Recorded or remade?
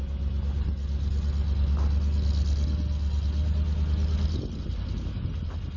recorded